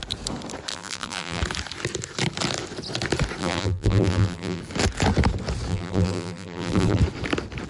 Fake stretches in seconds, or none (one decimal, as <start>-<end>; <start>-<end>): 0.7-1.4; 3.4-4.6; 5.7-7.0